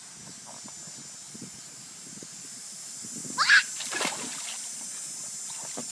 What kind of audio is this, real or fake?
real